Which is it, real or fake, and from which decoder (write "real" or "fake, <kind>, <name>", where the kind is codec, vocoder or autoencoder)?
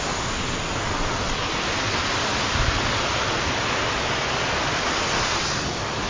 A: real